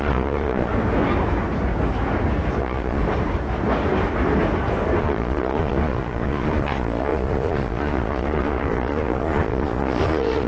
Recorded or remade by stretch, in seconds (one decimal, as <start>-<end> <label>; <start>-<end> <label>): 0.0-0.7 remade; 0.7-2.6 recorded; 2.6-3.0 remade; 3.0-5.0 recorded; 5.0-10.5 remade